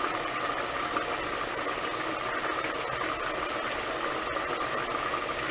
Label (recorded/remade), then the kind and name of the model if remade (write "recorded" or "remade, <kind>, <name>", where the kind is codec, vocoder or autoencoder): recorded